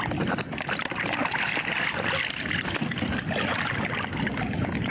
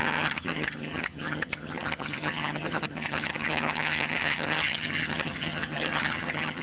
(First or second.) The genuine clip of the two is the first